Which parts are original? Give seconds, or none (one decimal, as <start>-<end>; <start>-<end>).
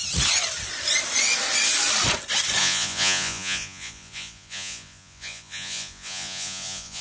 0.0-2.6